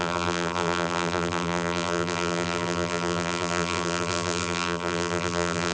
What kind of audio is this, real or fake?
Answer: fake